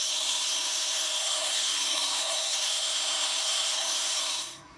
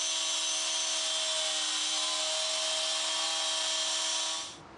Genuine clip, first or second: second